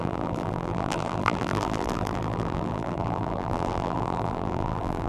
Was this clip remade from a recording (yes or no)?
yes